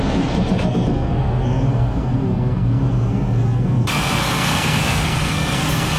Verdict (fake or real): fake